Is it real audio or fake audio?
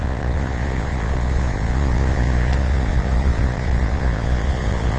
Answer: fake